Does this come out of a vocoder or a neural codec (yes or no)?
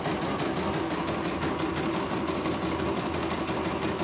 no